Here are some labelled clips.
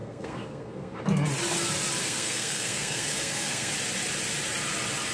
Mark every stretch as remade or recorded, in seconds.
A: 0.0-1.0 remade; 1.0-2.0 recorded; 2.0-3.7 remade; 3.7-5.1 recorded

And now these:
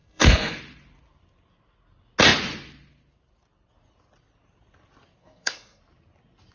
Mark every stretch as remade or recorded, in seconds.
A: 0.0-0.6 remade; 0.6-5.2 recorded; 5.2-5.8 remade; 5.8-6.5 recorded

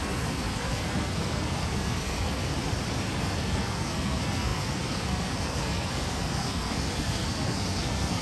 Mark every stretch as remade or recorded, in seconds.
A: 0.0-2.5 remade; 2.5-3.2 recorded; 3.2-8.2 remade

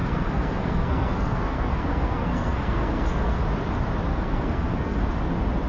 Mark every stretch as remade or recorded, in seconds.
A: 0.0-3.4 remade; 3.4-4.1 recorded; 4.1-5.0 remade; 5.0-5.7 recorded

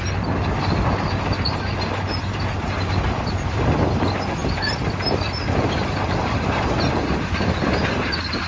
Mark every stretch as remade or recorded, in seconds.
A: 0.0-8.5 recorded

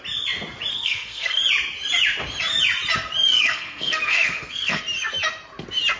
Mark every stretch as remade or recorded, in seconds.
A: 0.0-0.7 recorded; 0.7-1.4 remade; 1.4-3.3 recorded; 3.3-4.8 remade; 4.8-6.0 recorded